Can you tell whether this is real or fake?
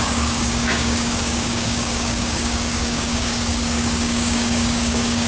fake